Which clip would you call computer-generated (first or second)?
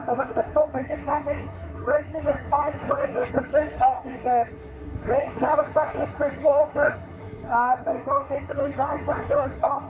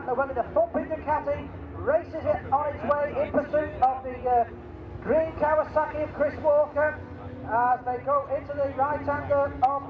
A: first